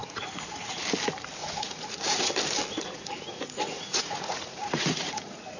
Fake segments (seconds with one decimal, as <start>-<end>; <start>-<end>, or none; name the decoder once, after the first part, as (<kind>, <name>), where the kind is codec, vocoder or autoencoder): 0.0-0.8 (vocoder, Vocos); 1.4-2.3; 2.7-5.6